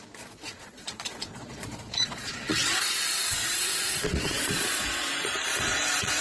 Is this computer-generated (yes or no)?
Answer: yes